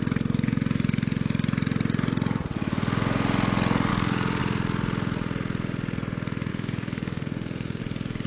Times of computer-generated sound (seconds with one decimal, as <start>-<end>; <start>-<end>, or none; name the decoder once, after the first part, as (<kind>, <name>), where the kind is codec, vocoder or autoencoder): 3.9-4.4 (codec, DAC); 6.5-7.8